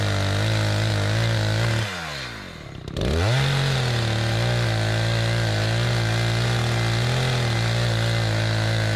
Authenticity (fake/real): real